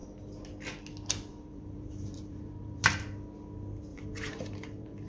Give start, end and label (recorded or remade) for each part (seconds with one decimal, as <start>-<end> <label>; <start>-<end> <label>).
0.0-1.3 recorded; 1.3-2.8 remade; 2.8-3.9 recorded; 3.9-5.1 remade